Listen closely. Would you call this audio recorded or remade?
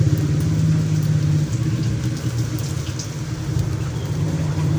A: recorded